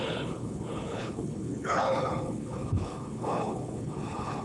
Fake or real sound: fake